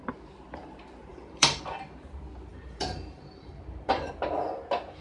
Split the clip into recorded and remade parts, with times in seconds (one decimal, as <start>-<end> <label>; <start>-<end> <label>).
0.0-1.1 recorded; 1.1-1.6 remade; 1.6-2.5 recorded; 2.5-4.1 remade; 4.1-5.0 recorded